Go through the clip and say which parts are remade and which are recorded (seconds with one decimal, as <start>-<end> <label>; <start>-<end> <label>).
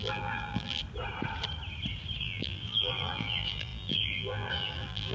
0.0-0.8 remade; 0.8-2.2 recorded; 2.2-5.1 remade